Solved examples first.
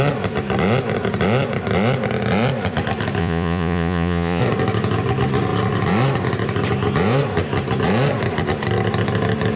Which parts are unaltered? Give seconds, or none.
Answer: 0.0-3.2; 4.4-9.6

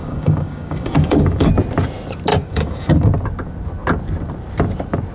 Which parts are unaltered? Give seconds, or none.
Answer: 1.5-2.3; 3.1-5.1